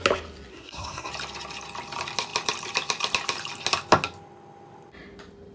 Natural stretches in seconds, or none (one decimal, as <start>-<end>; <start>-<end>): 0.0-0.5; 1.1-5.5